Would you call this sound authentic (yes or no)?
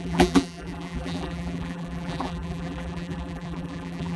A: no